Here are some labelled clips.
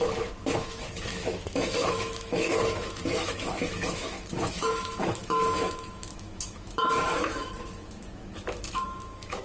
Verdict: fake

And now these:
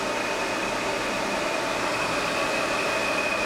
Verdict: real